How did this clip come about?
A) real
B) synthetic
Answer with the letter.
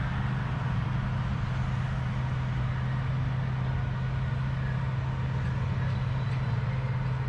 A